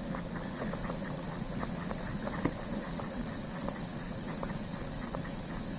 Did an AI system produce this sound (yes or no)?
yes